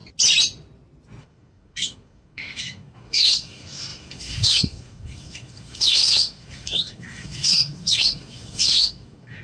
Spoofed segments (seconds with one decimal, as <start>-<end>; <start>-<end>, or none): 1.2-9.4